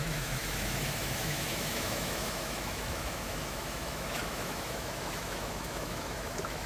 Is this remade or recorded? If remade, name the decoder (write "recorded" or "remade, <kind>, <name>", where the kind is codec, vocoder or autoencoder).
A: remade, autoencoder, DAC-VAE